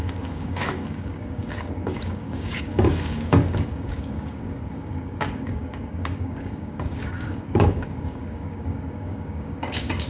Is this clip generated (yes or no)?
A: yes